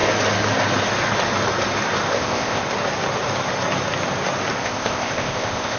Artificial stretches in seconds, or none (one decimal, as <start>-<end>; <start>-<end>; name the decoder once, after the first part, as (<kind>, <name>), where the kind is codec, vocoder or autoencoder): 2.1-2.6 (codec, ZipCodec); 4.6-5.8